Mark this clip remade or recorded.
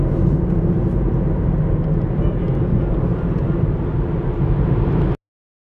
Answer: recorded